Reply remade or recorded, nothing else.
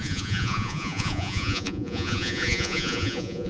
remade